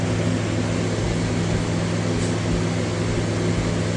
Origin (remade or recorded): recorded